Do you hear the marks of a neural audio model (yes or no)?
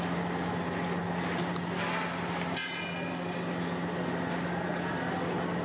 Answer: no